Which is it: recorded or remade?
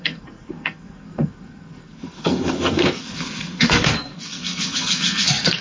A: remade